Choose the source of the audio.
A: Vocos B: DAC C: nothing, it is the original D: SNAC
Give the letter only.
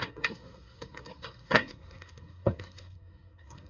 D